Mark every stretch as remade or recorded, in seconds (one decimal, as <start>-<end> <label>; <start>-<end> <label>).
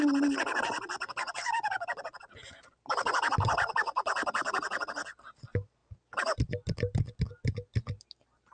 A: 0.0-8.5 recorded